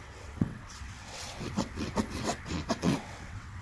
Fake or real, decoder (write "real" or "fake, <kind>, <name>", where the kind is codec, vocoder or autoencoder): fake, vocoder, WaveNeXt